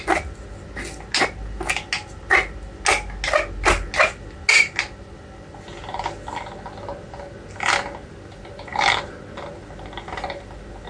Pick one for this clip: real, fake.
real